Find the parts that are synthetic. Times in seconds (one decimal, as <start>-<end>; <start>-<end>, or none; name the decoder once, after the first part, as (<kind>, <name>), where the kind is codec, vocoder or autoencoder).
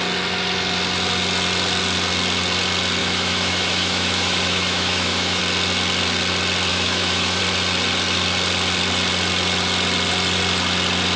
3.0-5.4 (autoencoder, DAC-VAE); 6.7-7.4